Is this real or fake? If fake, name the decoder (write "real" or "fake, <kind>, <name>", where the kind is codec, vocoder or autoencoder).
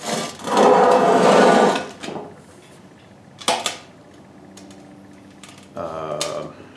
real